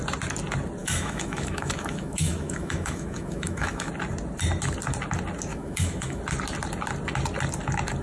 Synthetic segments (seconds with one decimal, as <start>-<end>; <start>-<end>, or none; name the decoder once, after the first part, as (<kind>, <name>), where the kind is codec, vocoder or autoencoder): 0.8-3.9 (autoencoder, DAC-VAE); 5.5-6.2